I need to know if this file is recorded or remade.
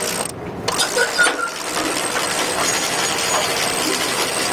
recorded